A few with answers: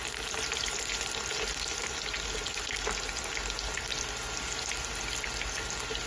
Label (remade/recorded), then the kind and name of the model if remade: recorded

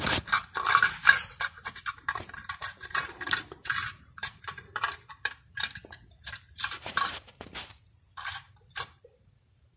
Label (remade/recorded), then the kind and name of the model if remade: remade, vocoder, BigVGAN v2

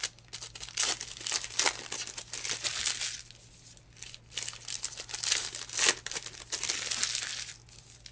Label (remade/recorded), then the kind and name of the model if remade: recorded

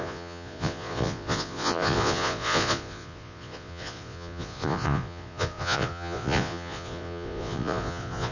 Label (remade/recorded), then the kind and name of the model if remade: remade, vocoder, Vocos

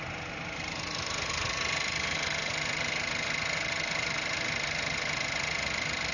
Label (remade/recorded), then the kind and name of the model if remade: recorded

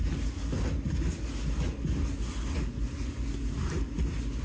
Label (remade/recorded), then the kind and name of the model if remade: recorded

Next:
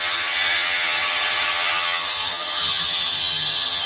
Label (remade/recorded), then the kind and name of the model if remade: remade, vocoder, HiFi-GAN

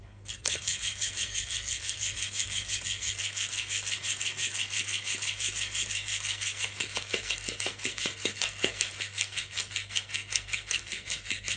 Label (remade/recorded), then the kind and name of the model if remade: remade, codec, SNAC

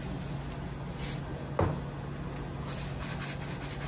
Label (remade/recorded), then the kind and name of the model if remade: recorded